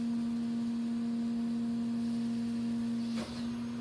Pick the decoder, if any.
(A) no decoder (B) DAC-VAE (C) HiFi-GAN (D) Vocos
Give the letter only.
A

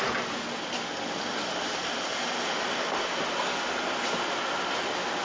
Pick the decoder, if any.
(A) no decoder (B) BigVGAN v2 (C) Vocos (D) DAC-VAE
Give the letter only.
A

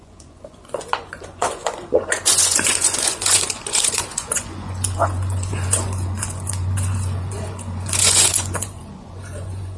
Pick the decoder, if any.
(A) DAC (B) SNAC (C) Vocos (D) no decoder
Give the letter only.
C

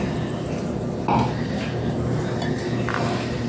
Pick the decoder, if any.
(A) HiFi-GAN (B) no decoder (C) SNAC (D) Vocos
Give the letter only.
B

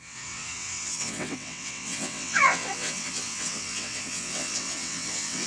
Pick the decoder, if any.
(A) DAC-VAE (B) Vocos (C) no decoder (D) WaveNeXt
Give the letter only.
D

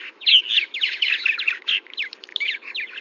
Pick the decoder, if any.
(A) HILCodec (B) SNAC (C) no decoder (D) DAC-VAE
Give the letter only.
D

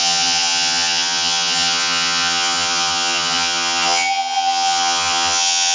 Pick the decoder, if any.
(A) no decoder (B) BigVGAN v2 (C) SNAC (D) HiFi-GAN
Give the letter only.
D